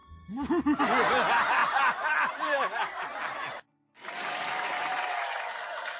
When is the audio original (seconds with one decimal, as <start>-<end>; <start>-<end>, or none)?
0.0-1.6; 5.2-6.0